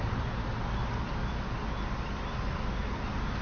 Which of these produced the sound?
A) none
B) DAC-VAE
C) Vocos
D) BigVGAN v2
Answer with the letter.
A